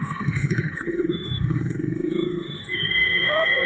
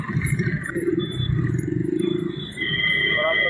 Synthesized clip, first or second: first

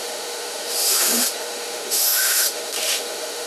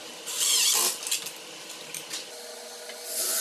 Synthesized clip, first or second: first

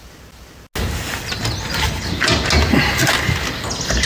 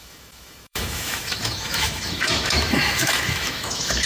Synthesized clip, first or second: second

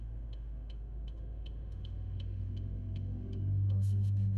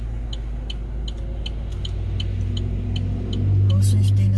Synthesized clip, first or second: first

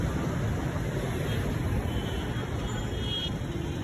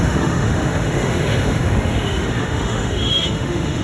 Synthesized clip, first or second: second